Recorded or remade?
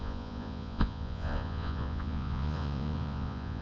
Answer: remade